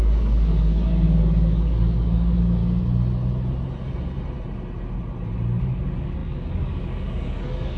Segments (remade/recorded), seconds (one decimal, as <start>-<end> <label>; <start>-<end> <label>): 0.0-2.6 remade; 2.6-5.6 recorded; 5.6-7.8 remade